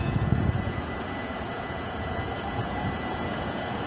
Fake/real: fake